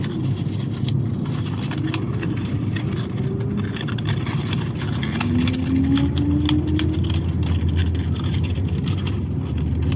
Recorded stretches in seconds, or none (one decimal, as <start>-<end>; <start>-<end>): 0.0-10.0